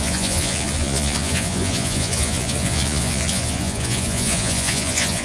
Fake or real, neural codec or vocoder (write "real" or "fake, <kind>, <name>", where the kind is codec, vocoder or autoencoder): fake, vocoder, Vocos